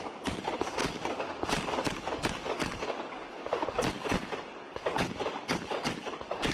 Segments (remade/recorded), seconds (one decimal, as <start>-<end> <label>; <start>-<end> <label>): 0.0-6.5 remade